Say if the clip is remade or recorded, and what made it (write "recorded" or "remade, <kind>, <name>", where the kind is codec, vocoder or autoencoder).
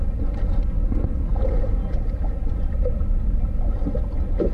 recorded